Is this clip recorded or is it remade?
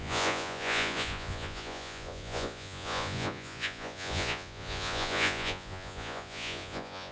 remade